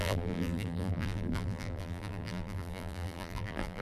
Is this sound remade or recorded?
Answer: remade